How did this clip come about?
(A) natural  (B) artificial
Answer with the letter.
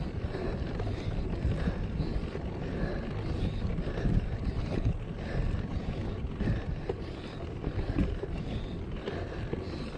A